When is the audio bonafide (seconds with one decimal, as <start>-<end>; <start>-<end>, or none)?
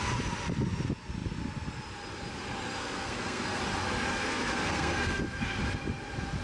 0.0-2.8; 3.6-4.1; 5.2-6.4